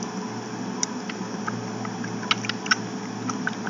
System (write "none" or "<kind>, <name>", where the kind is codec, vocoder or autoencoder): none